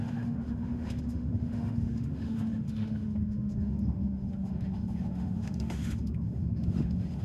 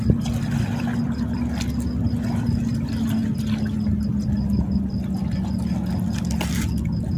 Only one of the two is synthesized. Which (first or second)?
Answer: first